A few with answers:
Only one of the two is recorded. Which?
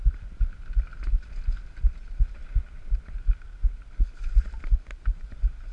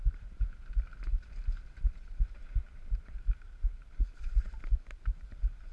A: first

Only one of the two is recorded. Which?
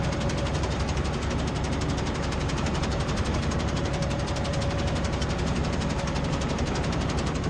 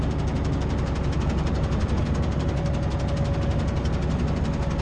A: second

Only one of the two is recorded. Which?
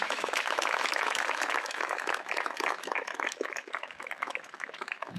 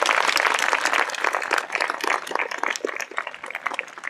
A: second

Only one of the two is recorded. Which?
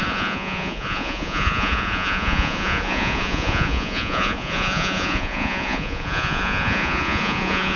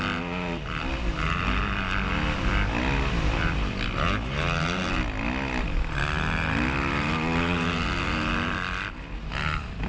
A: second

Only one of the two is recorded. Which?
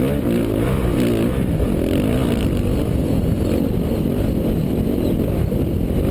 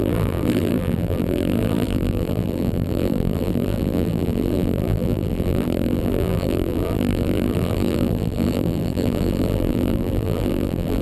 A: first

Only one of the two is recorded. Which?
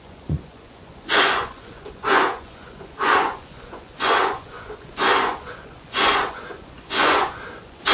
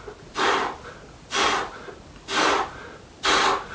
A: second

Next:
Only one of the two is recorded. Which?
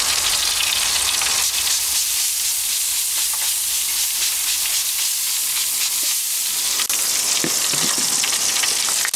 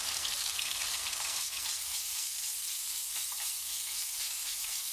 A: first